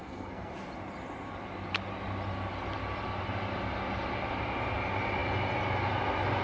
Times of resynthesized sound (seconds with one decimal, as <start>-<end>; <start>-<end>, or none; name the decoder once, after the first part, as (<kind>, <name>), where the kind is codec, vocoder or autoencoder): 0.0-0.5 (codec, SNAC)